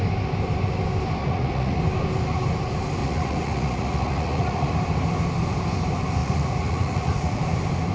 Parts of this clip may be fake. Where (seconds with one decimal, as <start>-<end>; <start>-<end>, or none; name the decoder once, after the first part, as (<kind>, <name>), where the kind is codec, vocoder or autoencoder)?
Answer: 1.2-1.8 (vocoder, Vocos); 3.0-4.7; 6.2-7.4